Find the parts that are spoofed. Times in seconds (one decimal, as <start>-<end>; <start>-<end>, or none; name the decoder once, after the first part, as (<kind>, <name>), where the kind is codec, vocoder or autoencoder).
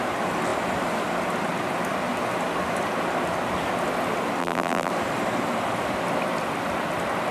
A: 4.4-4.9 (vocoder, BigVGAN v2)